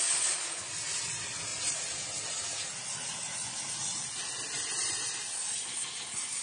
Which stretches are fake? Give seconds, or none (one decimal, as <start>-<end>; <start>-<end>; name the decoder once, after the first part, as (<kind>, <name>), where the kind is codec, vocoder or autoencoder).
none